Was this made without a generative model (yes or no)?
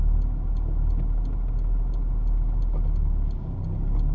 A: yes